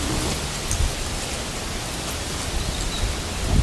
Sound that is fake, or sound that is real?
real